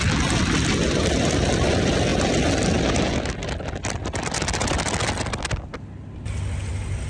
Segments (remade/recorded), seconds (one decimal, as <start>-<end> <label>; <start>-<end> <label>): 0.0-7.1 recorded